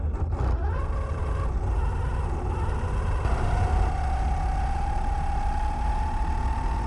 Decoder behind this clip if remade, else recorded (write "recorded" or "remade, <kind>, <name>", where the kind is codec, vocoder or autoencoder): recorded